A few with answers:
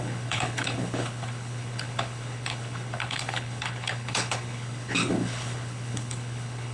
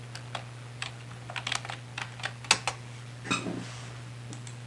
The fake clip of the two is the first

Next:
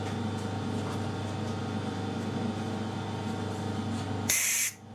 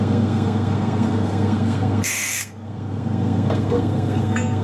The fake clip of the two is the second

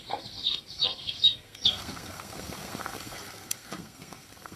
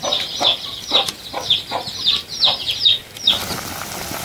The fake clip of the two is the first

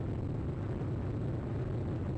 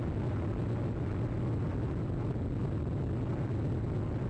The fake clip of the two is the first